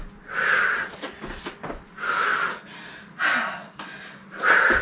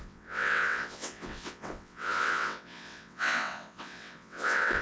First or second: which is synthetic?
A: second